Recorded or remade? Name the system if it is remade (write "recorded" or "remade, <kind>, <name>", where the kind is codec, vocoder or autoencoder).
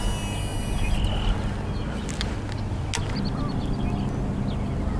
recorded